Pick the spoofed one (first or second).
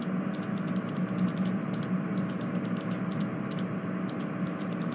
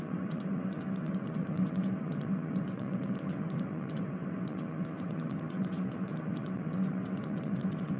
second